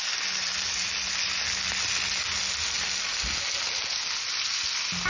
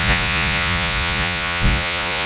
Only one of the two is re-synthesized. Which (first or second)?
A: second